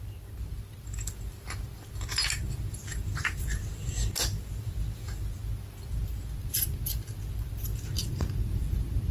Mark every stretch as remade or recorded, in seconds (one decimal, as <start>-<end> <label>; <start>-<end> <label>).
0.0-9.1 recorded